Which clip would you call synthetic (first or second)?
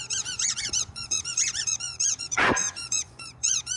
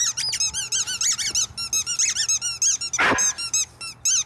first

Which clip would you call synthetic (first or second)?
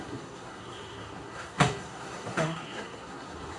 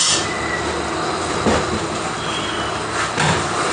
first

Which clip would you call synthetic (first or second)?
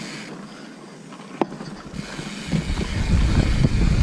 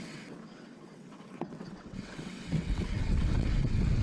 second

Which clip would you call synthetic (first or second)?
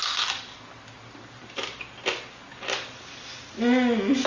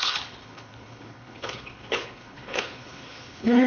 second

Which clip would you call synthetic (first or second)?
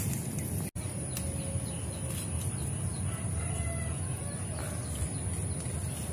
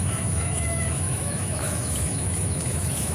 second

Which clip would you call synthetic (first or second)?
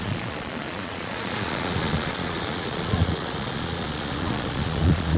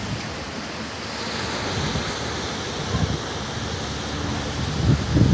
first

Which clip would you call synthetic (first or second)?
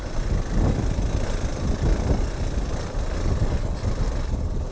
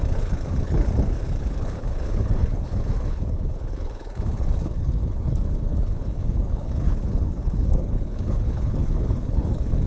second